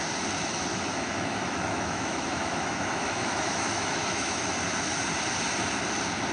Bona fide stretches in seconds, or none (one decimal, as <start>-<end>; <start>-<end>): 0.0-0.7; 4.5-6.3